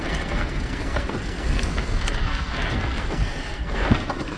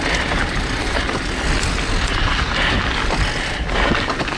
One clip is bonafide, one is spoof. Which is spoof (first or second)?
first